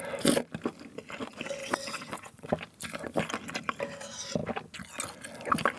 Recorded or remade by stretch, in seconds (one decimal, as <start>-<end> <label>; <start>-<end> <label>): 0.0-1.6 recorded; 1.6-2.5 remade; 2.5-5.8 recorded